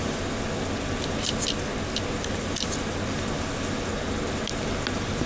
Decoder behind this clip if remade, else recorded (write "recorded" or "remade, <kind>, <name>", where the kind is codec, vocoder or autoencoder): recorded